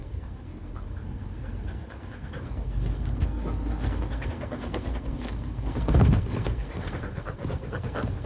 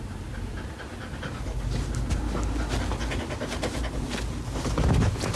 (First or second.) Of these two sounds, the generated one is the first